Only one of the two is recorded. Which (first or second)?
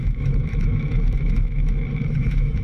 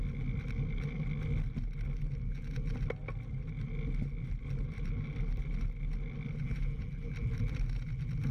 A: second